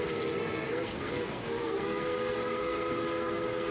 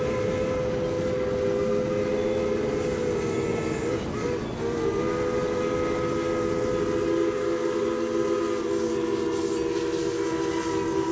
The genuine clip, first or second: second